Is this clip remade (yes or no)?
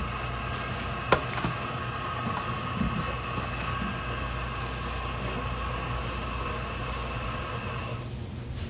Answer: no